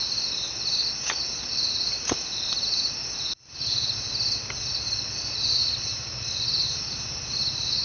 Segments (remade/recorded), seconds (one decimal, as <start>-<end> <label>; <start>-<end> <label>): 0.0-5.6 recorded; 5.6-6.8 remade; 6.8-7.8 recorded